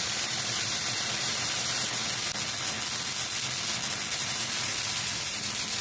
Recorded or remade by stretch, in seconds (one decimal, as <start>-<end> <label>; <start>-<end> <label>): 0.0-2.0 remade; 2.0-4.2 recorded; 4.2-5.8 remade